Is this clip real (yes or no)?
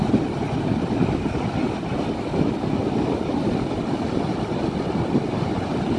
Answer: yes